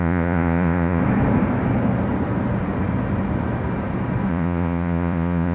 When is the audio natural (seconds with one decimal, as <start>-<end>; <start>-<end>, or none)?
1.0-4.3